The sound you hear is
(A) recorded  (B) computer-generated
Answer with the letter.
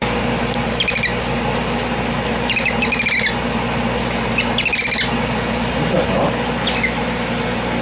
A